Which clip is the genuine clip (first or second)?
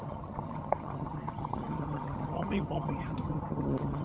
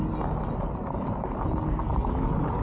second